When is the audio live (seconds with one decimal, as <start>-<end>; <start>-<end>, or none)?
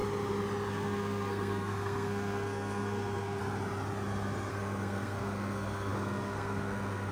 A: 0.0-0.7; 3.4-4.5